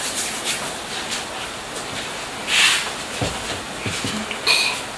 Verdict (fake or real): real